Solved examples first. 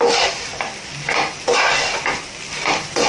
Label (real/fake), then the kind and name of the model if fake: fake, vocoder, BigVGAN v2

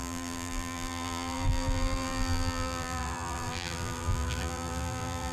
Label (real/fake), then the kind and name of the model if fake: fake, vocoder, BigVGAN v2